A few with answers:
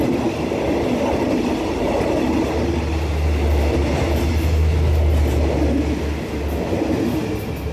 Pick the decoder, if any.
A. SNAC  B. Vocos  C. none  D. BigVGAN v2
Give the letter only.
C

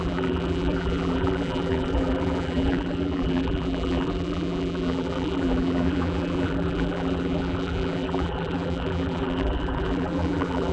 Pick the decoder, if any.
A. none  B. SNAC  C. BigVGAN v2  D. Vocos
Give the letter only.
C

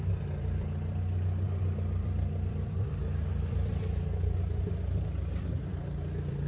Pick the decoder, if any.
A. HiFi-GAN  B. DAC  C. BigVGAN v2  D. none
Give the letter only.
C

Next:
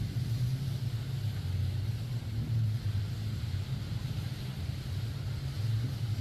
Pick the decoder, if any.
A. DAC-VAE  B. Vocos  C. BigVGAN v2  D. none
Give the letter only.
D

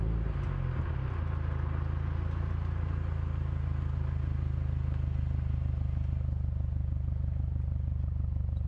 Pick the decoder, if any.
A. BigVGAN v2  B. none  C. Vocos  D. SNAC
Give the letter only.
B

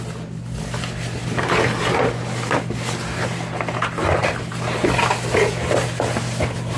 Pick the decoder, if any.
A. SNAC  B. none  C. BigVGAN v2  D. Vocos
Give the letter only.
B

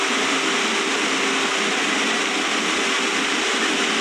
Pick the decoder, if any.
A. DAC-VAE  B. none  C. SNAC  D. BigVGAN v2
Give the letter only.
B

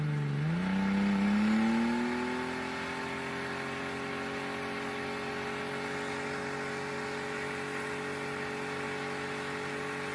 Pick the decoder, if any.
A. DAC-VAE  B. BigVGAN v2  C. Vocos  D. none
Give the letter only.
D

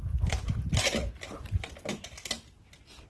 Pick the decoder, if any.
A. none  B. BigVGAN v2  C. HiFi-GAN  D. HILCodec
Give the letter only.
A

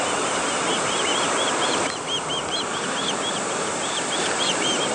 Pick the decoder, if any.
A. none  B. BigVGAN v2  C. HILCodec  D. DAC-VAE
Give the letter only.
B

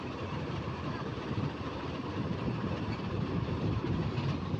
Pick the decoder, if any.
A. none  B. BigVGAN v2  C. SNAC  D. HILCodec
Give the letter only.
B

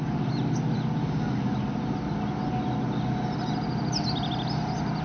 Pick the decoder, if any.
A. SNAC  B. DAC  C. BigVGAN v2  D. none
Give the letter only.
D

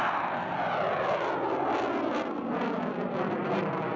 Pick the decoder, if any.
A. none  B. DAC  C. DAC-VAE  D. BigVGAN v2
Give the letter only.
A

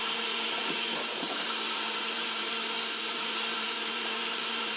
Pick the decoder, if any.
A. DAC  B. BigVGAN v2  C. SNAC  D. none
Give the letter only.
B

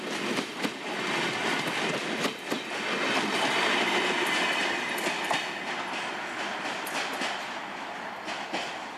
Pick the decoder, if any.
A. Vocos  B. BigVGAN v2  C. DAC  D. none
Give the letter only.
D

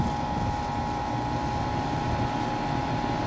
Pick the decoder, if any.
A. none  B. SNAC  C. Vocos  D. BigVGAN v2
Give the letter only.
D